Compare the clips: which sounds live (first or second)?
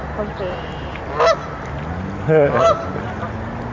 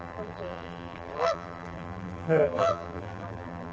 first